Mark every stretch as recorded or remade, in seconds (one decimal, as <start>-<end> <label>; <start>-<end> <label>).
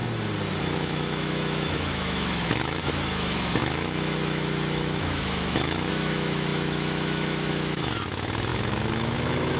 0.0-0.6 recorded; 0.6-9.6 remade